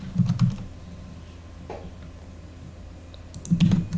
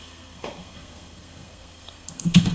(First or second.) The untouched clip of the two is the first